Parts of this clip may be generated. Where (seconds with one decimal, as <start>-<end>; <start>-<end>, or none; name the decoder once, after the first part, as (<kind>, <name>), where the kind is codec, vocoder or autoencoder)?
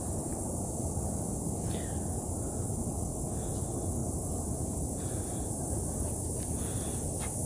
4.0-6.6 (vocoder, BigVGAN v2)